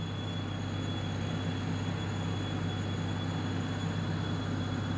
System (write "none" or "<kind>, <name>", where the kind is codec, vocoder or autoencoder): none